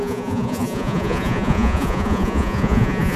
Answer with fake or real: fake